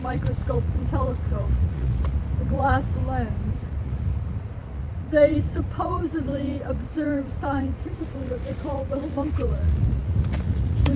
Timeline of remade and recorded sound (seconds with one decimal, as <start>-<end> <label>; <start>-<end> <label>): 0.0-3.0 remade; 3.0-3.5 recorded; 3.5-11.0 remade